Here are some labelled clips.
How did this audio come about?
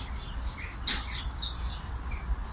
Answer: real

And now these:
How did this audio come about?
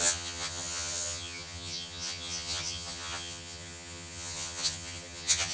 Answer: fake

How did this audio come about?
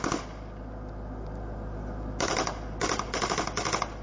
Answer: real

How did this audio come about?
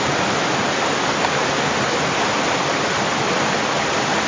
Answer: real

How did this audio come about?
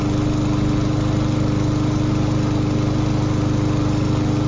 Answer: real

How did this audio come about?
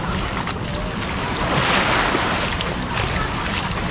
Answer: real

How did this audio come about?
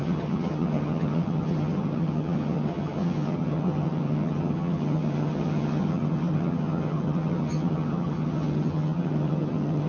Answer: fake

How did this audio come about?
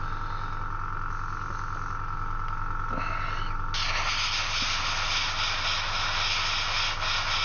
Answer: real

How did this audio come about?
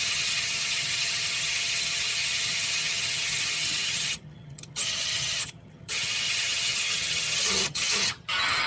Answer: fake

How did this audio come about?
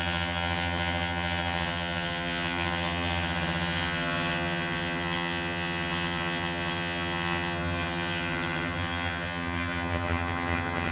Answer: fake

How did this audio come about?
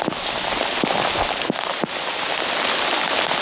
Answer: real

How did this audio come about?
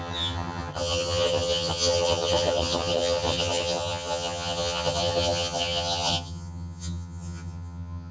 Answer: fake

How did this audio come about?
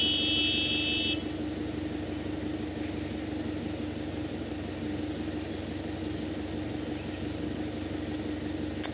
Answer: real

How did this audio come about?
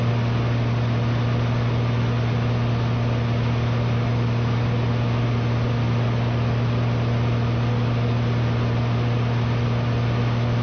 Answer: real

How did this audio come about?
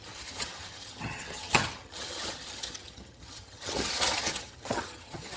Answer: fake